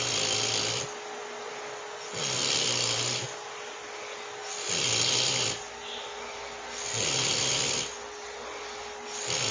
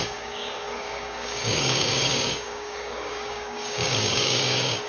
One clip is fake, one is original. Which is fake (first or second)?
second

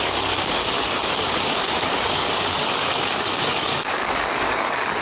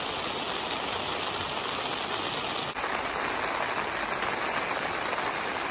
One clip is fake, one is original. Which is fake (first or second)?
first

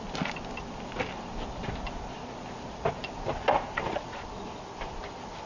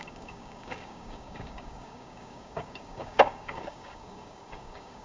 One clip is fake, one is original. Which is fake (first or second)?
second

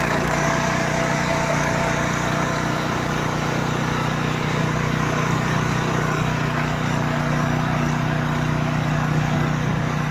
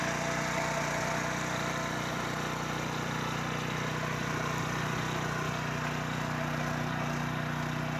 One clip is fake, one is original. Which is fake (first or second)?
first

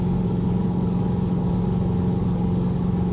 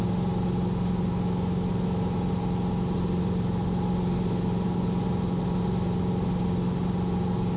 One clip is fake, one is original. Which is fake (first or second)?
first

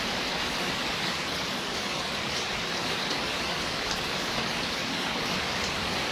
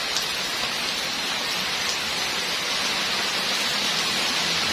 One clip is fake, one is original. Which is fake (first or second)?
first